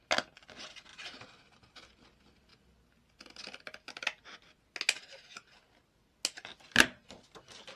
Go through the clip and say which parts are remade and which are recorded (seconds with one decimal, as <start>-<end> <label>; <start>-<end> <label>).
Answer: 0.0-0.9 recorded; 0.9-1.7 remade; 1.7-7.8 recorded